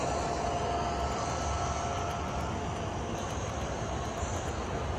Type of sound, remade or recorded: recorded